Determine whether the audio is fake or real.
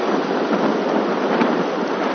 real